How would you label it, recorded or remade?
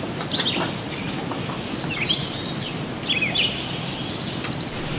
recorded